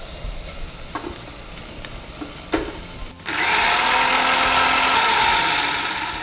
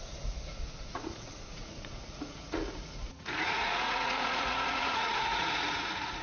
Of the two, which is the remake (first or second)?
second